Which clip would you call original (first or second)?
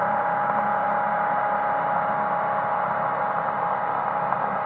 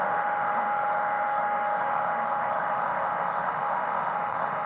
first